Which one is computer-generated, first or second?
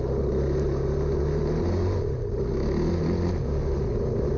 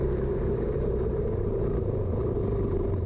second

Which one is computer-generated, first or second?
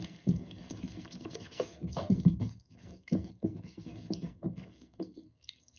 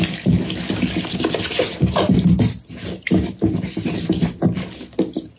first